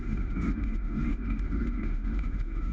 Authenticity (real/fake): fake